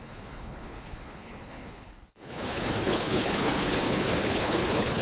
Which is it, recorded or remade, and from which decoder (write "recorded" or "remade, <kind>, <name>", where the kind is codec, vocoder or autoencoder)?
remade, codec, HILCodec